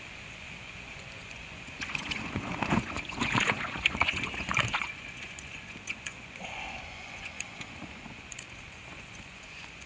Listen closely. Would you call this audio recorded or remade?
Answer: remade